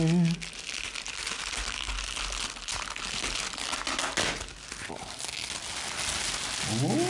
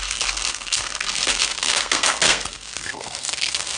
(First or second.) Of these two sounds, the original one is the first